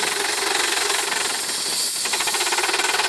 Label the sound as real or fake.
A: real